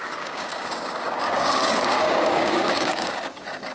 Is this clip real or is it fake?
fake